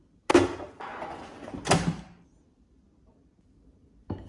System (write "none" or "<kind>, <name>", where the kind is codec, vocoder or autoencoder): none